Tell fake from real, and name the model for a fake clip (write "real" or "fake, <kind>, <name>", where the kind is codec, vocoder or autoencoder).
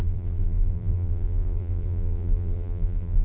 fake, vocoder, BigVGAN v2